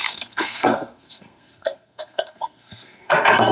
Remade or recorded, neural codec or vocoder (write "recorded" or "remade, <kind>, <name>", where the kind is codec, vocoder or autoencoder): remade, codec, SNAC